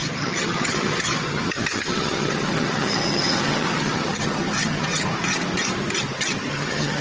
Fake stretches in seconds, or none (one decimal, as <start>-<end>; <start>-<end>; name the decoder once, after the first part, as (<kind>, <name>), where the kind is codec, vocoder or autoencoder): 0.0-4.9 (vocoder, HiFi-GAN); 6.5-7.0

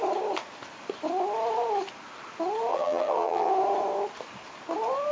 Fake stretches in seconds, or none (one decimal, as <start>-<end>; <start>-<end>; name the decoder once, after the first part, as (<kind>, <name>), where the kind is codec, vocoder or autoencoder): 2.7-3.5 (vocoder, HiFi-GAN)

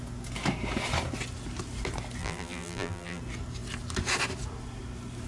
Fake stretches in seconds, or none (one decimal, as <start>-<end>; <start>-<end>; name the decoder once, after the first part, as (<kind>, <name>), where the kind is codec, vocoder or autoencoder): 2.2-3.2 (vocoder, BigVGAN v2)

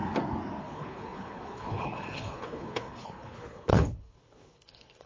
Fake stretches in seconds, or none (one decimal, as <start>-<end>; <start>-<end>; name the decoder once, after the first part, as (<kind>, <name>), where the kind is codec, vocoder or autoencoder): 0.6-5.1 (codec, HILCodec)

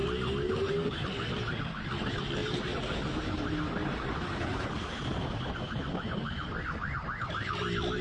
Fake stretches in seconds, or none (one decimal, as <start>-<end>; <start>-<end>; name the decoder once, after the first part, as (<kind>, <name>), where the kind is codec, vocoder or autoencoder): none

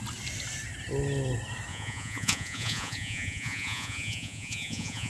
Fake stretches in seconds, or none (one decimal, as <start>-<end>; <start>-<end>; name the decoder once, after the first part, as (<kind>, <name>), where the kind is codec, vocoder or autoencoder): 1.7-5.1 (vocoder, Vocos)